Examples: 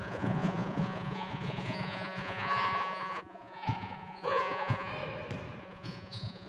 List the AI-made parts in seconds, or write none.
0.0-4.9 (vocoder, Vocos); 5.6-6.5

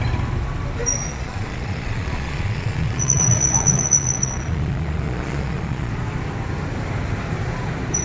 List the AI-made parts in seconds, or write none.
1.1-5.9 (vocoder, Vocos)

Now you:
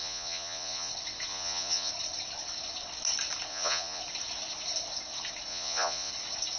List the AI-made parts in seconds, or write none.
0.0-0.9 (vocoder, Vocos); 1.3-1.9; 3.5-4.0; 5.5-6.1

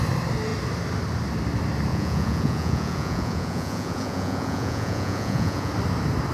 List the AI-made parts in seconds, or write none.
1.9-5.7 (vocoder, Vocos)

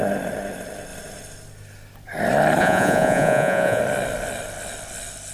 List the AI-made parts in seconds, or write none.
2.6-3.8 (vocoder, Vocos)

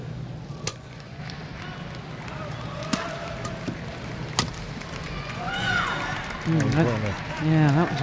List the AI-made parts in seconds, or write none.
0.7-1.2 (vocoder, Vocos); 5.0-5.9